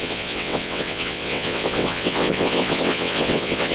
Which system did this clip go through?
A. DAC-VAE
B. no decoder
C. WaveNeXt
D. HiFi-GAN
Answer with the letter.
C